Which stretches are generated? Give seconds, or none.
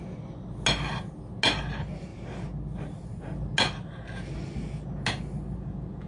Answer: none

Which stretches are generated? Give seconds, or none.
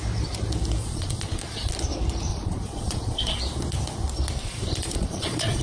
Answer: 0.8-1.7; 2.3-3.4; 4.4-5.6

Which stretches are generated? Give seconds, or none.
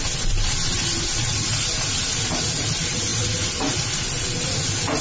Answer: none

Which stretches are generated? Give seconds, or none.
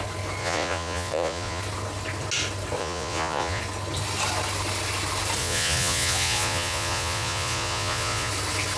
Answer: 0.4-1.6; 2.8-3.6; 5.4-8.3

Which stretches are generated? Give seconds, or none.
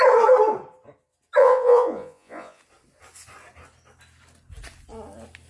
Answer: 1.4-2.6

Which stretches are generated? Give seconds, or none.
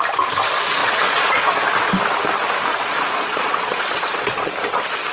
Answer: 0.8-1.5; 2.7-4.5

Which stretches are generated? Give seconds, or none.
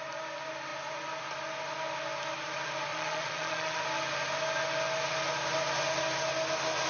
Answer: 2.9-3.8